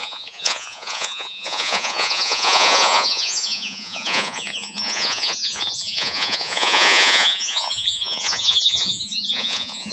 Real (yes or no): no